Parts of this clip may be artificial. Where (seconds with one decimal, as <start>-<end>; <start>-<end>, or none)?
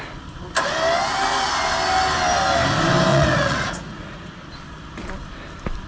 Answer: 3.1-4.3